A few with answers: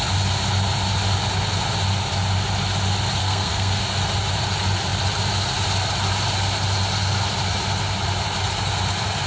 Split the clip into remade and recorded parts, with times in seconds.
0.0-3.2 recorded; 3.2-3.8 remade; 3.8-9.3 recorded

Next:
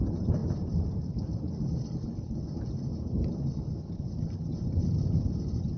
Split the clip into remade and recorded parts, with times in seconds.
0.0-5.8 remade

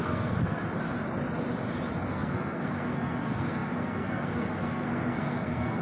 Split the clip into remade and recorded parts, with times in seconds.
0.0-0.6 remade; 0.6-2.1 recorded; 2.1-5.8 remade

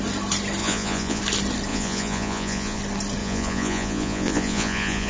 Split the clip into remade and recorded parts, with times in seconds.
0.0-0.6 recorded; 0.6-1.2 remade; 1.2-1.7 recorded; 1.7-2.8 remade; 2.8-3.2 recorded; 3.2-5.1 remade

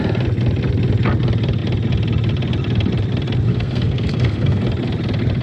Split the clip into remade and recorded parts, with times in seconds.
0.0-3.5 recorded; 3.5-4.6 remade; 4.6-5.4 recorded